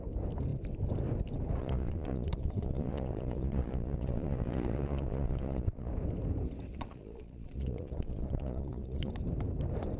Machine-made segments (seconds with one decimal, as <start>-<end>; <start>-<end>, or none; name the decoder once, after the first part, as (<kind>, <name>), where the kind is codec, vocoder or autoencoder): 1.6-5.9 (vocoder, Vocos); 6.7-9.1